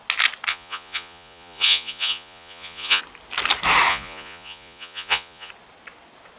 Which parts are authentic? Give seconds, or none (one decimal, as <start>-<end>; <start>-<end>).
0.0-0.5; 3.0-3.9; 5.5-6.4